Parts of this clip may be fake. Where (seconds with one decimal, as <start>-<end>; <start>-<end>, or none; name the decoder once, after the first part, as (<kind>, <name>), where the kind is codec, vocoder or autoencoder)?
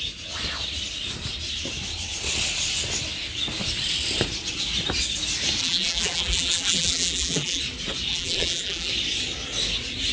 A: 5.6-7.6 (vocoder, BigVGAN v2); 8.1-8.9